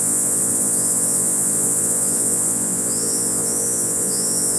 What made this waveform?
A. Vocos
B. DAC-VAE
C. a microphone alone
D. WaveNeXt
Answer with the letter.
A